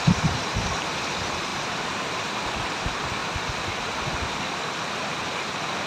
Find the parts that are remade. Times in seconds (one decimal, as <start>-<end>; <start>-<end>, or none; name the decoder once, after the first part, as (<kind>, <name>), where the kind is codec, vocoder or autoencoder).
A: 1.5-2.4 (vocoder, BigVGAN v2)

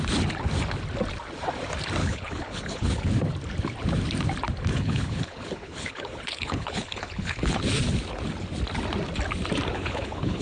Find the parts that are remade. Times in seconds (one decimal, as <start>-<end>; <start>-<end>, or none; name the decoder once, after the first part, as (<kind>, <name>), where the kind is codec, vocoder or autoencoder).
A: 2.0-3.1 (codec, HILCodec); 4.7-7.6; 9.7-10.4